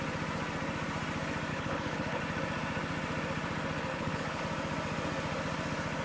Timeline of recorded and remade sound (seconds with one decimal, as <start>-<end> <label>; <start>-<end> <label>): 0.0-1.5 recorded; 1.5-2.2 remade; 2.2-3.9 recorded; 3.9-4.4 remade; 4.4-6.0 recorded